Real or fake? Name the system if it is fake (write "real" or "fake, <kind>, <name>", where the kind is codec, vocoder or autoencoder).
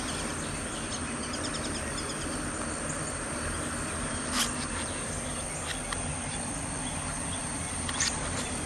real